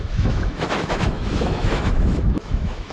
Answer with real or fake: fake